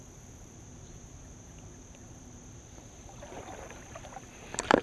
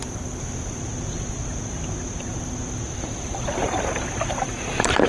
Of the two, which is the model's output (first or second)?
first